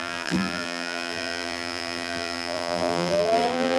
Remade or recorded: remade